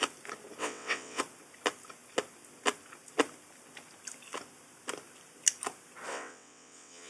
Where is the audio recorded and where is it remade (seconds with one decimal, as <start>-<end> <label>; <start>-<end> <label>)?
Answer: 0.0-0.6 recorded; 0.6-1.2 remade; 1.2-6.1 recorded; 6.1-7.1 remade